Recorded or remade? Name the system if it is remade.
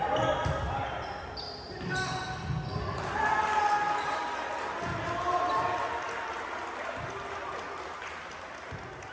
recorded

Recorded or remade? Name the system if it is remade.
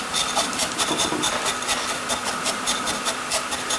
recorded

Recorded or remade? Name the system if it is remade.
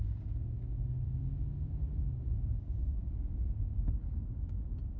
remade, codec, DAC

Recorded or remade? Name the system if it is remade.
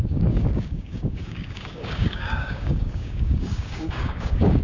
remade, codec, DAC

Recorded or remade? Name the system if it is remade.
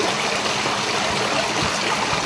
recorded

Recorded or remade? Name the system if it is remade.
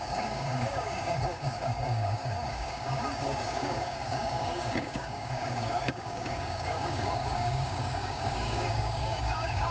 remade, codec, DAC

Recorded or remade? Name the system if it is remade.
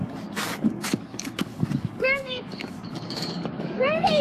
remade, codec, DAC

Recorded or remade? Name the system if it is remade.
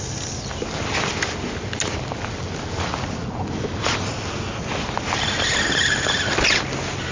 recorded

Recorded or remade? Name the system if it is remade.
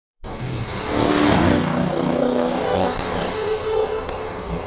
remade, codec, DAC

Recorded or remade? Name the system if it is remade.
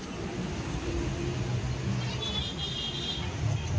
recorded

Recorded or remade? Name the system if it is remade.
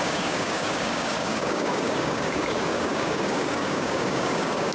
remade, codec, DAC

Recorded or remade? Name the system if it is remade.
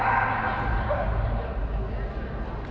recorded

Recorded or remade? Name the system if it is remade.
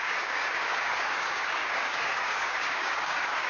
remade, codec, DAC